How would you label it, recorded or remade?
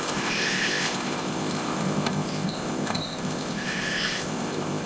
remade